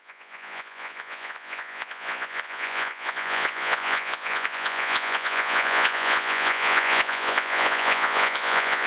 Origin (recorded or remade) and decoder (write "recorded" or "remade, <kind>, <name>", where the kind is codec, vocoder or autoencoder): remade, vocoder, Vocos